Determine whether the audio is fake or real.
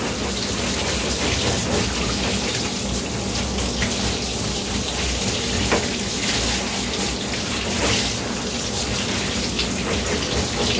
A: real